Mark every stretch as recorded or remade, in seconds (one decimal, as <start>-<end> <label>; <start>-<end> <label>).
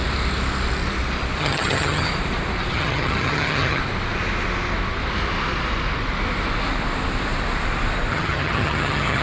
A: 0.0-1.4 recorded; 1.4-2.1 remade; 2.1-2.7 recorded; 2.7-3.8 remade; 3.8-8.1 recorded; 8.1-9.2 remade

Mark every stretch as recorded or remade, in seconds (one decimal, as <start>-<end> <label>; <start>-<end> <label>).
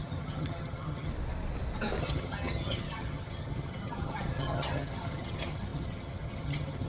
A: 0.0-1.1 remade; 1.1-2.0 recorded; 2.0-6.9 remade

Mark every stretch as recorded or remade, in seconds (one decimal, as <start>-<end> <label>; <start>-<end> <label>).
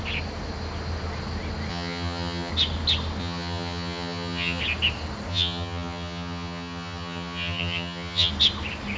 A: 0.0-1.7 recorded; 1.7-2.5 remade; 2.5-3.2 recorded; 3.2-4.6 remade; 4.6-5.3 recorded; 5.3-8.3 remade; 8.3-9.0 recorded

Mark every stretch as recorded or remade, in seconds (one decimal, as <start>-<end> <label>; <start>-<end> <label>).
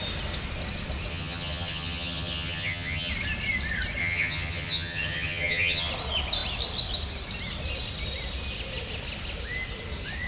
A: 0.0-1.1 recorded; 1.1-3.1 remade; 3.1-4.0 recorded; 4.0-5.9 remade; 5.9-10.3 recorded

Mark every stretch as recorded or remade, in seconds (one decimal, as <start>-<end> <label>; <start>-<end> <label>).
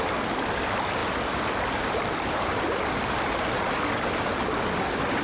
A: 0.0-5.2 recorded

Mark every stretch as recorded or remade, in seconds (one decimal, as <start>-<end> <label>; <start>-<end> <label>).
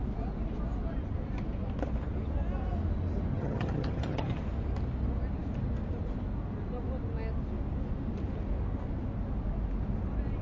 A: 0.0-3.3 recorded; 3.3-4.4 remade; 4.4-10.4 recorded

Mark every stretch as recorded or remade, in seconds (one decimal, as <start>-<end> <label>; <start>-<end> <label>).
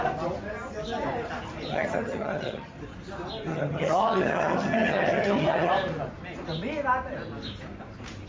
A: 0.0-1.7 recorded; 1.7-2.8 remade; 2.8-3.5 recorded; 3.5-5.7 remade; 5.7-8.3 recorded